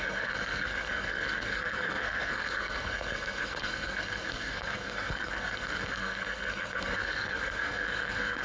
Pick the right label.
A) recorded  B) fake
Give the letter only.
B